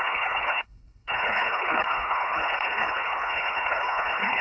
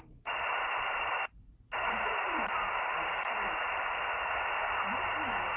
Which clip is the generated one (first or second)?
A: first